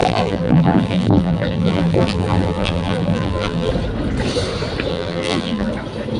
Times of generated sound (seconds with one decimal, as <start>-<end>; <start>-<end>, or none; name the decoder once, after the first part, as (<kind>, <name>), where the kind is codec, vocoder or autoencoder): 0.0-3.7 (vocoder, BigVGAN v2); 4.9-5.7